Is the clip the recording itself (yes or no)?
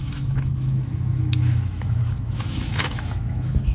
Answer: no